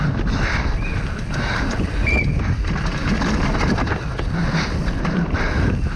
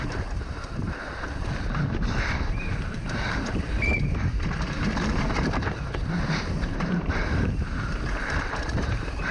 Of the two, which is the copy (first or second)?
second